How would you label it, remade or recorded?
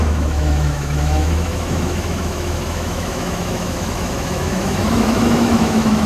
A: remade